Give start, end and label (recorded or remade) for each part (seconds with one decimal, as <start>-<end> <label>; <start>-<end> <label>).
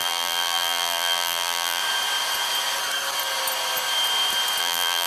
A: 0.0-1.8 remade; 1.8-4.6 recorded; 4.6-5.1 remade